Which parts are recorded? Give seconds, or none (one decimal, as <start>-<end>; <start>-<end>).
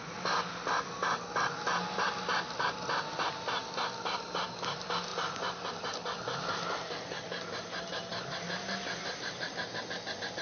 0.0-10.4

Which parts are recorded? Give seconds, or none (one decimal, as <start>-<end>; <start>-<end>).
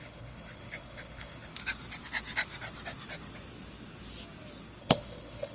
1.5-4.8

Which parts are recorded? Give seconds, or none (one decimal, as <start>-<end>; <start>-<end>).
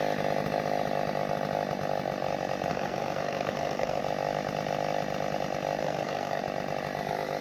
0.0-2.7; 4.0-5.8; 6.4-7.4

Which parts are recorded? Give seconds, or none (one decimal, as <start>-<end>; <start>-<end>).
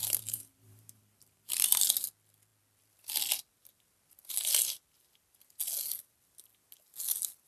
1.5-7.5